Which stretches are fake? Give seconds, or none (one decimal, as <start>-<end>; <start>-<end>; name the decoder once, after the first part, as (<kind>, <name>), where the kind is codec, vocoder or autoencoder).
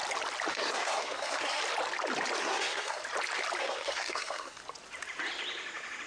0.5-1.6 (codec, SNAC); 2.4-3.0; 3.6-4.6